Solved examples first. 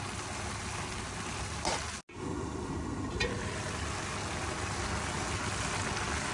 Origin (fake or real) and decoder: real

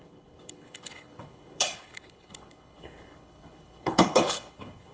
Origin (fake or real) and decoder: fake, codec, HILCodec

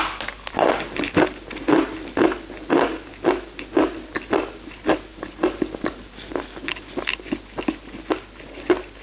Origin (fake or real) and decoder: real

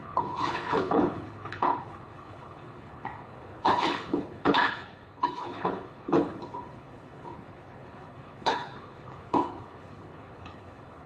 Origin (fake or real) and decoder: fake, codec, HILCodec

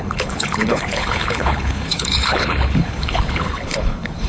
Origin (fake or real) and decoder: fake, codec, HILCodec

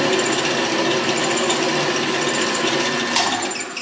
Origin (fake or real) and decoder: real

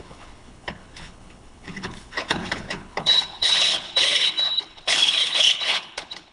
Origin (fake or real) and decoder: fake, codec, HILCodec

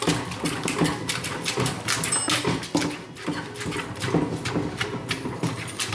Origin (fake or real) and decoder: real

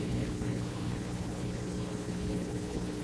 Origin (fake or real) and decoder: fake, codec, HILCodec